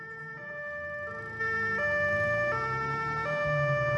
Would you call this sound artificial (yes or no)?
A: no